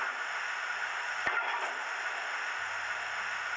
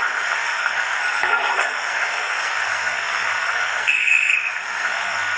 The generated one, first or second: second